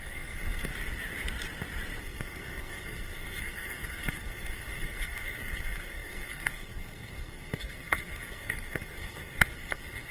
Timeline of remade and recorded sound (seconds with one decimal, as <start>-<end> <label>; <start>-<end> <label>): 0.0-0.7 remade; 0.7-2.0 recorded; 2.0-10.1 remade